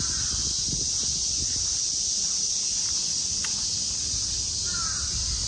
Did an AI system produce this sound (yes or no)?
no